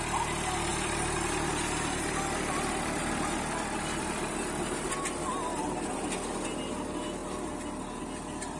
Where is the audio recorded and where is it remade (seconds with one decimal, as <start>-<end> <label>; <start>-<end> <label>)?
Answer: 0.0-0.7 recorded; 0.7-4.9 remade; 4.9-8.6 recorded